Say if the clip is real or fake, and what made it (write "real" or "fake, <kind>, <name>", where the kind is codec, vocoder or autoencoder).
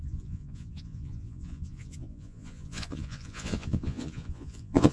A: fake, vocoder, Vocos